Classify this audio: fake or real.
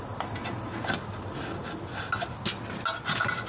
real